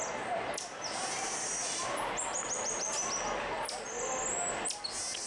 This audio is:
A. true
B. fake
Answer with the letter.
A